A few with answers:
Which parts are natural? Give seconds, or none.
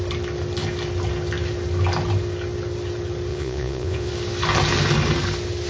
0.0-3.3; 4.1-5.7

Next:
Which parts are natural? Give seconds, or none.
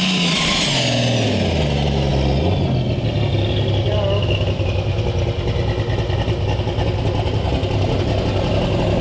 0.0-9.0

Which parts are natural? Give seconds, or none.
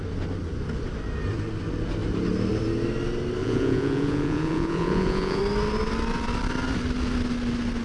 0.0-3.4; 5.4-7.8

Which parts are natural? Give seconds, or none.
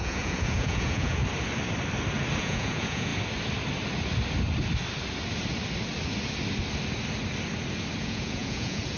1.2-2.4; 3.1-8.0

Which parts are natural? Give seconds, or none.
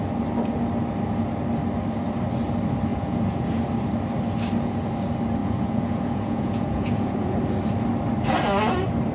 0.0-2.9; 3.6-5.4; 7.4-9.1